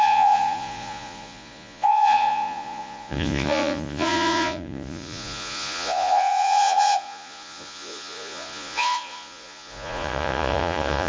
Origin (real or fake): fake